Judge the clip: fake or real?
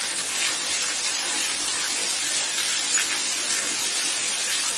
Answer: real